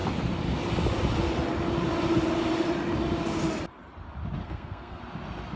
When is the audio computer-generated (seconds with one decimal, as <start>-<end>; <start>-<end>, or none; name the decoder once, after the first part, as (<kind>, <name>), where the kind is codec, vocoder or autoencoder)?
4.4-5.0 (codec, SNAC)